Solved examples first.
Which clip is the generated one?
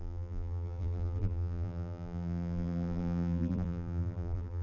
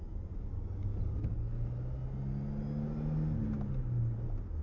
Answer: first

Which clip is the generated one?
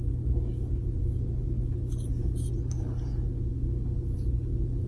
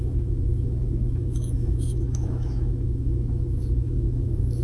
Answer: second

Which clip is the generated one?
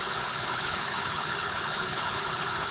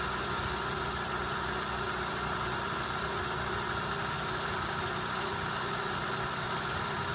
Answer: first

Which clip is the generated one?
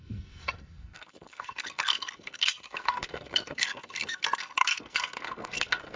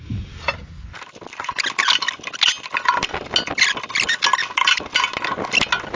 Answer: first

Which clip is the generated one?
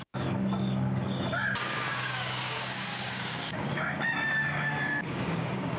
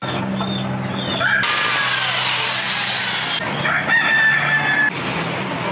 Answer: first